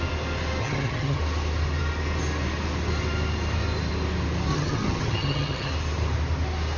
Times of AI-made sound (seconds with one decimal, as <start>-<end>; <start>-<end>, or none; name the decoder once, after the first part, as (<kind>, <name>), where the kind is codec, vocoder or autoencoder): 0.6-1.2 (vocoder, HiFi-GAN); 4.5-5.7